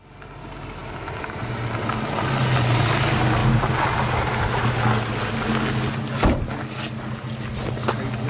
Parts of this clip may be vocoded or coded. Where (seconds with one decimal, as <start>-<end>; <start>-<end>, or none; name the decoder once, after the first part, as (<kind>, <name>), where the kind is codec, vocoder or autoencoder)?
none